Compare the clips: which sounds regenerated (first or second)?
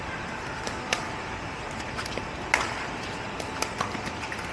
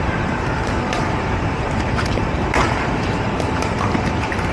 second